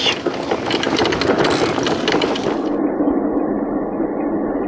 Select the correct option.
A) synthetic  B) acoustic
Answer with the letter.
B